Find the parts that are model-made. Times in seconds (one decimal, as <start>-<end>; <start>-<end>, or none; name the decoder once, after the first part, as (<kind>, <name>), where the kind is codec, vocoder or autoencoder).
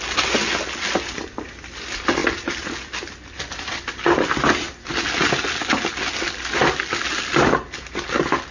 none